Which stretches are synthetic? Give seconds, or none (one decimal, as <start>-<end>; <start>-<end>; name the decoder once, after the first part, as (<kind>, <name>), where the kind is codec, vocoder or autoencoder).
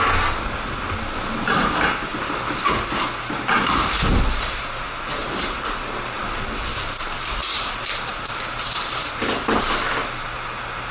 5.2-6.2 (vocoder, BigVGAN v2); 7.4-9.6